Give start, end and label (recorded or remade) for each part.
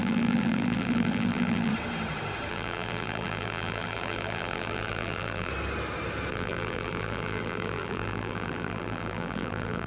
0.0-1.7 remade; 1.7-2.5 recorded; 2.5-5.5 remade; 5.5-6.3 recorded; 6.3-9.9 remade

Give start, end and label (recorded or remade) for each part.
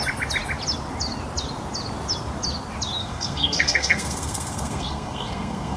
0.0-3.0 recorded; 3.0-5.8 remade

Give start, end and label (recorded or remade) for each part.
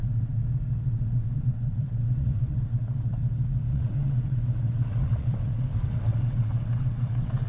0.0-0.4 remade; 0.4-0.9 recorded; 0.9-3.2 remade; 3.2-3.7 recorded; 3.7-7.5 remade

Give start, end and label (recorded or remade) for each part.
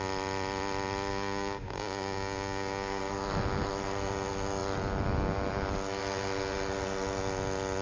0.0-1.1 recorded; 1.1-3.0 remade; 3.0-7.8 recorded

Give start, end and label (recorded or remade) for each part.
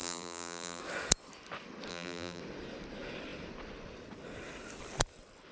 0.0-0.8 remade; 0.8-1.9 recorded; 1.9-2.4 remade; 2.4-5.5 recorded